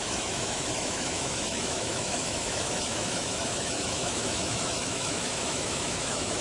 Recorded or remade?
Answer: remade